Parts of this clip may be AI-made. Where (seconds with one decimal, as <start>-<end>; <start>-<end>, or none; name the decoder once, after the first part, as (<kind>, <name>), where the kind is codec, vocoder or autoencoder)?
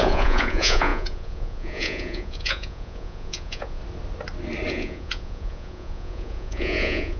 0.0-3.8 (vocoder, Vocos); 4.7-7.2